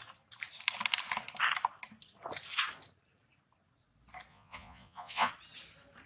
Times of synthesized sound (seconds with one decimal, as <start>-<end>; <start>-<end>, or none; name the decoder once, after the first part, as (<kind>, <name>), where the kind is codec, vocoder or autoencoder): 4.3-5.3 (vocoder, Vocos)